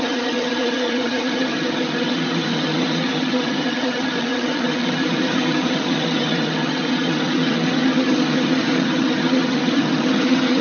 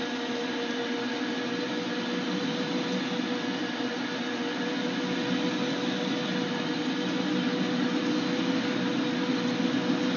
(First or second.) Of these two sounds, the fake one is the first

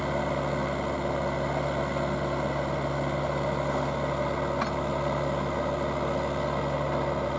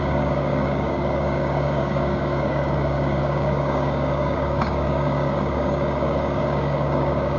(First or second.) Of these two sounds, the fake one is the second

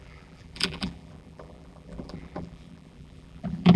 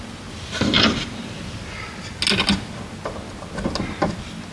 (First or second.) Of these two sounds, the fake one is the first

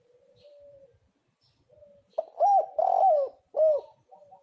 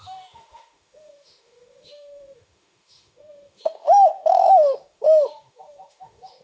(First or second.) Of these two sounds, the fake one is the second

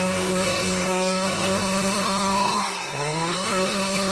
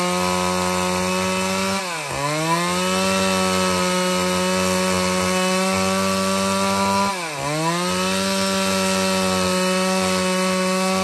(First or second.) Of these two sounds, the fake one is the first